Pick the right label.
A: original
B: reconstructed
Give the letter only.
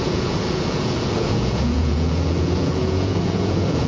B